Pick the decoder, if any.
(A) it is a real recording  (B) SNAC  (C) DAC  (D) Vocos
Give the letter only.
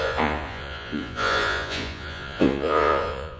D